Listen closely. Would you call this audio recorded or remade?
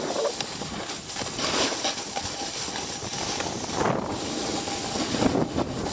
recorded